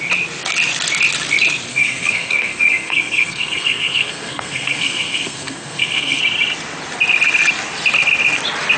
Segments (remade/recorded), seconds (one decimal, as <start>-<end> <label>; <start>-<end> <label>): 0.0-1.7 recorded; 1.7-6.2 remade; 6.2-8.8 recorded